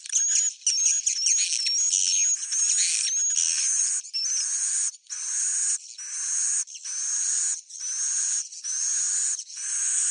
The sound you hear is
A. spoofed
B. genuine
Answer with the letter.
B